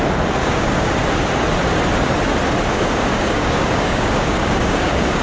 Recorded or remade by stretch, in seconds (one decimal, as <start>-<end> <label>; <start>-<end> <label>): 0.0-0.4 recorded; 0.4-0.9 remade; 0.9-2.7 recorded; 2.7-5.2 remade